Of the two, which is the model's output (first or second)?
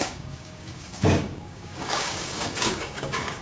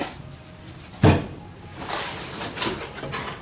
first